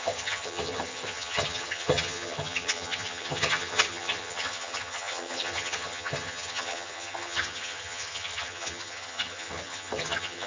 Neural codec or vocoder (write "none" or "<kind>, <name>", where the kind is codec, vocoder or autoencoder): vocoder, HiFi-GAN